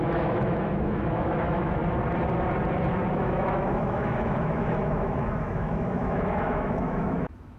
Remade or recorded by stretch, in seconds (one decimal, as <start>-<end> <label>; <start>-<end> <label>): 0.0-1.8 remade; 1.8-3.1 recorded; 3.1-7.6 remade